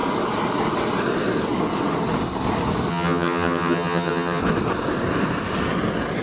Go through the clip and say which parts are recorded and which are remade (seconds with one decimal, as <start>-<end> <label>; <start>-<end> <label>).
0.0-2.9 recorded; 2.9-4.4 remade; 4.4-6.2 recorded